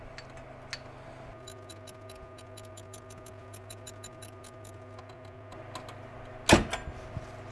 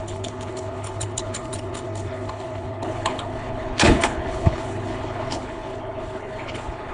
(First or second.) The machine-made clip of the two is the second